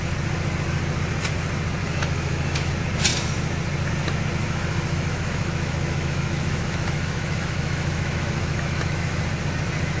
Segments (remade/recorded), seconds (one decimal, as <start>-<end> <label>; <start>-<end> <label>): 0.0-1.8 recorded; 1.8-2.7 remade; 2.7-4.4 recorded; 4.4-9.2 remade; 9.2-10.0 recorded